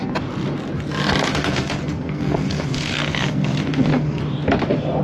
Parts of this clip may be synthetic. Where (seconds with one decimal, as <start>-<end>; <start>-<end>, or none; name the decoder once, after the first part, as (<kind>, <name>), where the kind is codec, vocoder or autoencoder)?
1.3-4.2 (codec, SNAC)

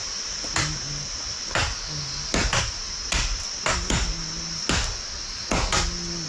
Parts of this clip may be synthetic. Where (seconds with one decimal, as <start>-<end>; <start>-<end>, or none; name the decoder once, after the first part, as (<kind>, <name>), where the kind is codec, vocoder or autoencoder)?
none

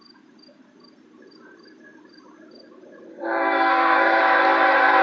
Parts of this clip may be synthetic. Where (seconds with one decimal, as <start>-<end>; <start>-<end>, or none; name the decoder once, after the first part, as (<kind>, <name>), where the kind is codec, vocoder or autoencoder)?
3.1-4.2 (codec, SNAC)

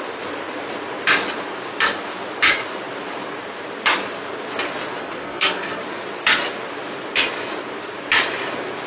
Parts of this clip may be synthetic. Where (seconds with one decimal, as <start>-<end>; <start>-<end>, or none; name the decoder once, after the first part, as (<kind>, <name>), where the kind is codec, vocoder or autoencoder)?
5.0-5.8 (codec, SNAC)